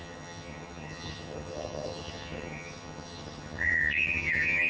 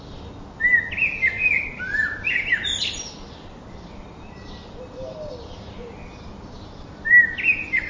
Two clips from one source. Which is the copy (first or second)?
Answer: first